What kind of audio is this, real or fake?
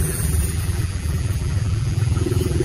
fake